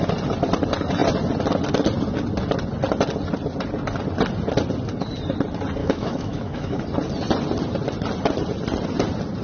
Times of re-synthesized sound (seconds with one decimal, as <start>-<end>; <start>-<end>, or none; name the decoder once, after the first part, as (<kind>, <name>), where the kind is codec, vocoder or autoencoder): 5.8-6.8 (autoencoder, DAC-VAE)